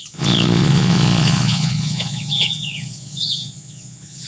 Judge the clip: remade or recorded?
remade